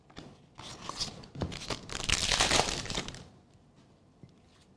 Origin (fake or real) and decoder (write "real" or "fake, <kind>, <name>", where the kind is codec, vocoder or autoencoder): real